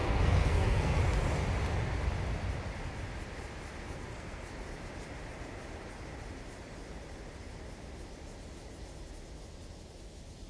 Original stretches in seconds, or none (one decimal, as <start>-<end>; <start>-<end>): 1.0-3.8; 4.5-10.5

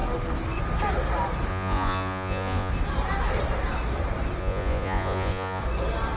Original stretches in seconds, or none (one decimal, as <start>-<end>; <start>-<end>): 0.0-1.5; 2.7-4.4; 5.6-6.2

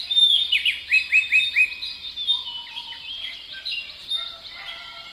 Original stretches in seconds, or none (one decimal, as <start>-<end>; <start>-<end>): 0.0-5.1

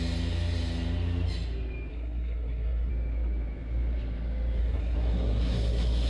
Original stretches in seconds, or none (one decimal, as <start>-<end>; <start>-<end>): 0.0-1.9; 2.9-4.6

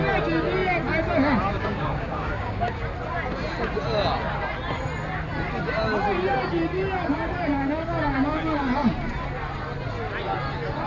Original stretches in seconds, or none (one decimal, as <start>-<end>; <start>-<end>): 0.0-1.5; 2.8-10.9

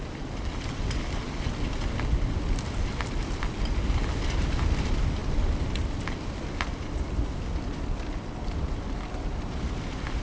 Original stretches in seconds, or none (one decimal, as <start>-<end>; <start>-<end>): 0.0-10.2

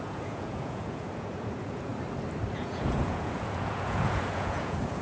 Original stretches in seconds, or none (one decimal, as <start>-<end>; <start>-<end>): 1.9-2.5